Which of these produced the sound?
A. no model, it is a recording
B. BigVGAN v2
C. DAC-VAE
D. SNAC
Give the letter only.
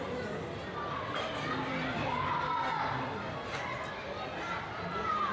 A